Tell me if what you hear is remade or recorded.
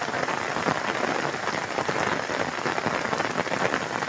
recorded